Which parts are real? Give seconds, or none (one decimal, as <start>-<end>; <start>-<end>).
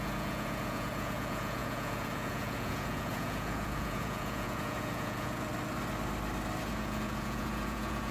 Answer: 5.5-6.7